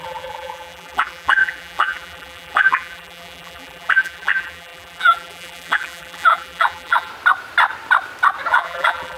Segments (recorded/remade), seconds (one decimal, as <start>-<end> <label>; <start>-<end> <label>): 0.0-7.1 remade; 7.1-8.5 recorded; 8.5-9.2 remade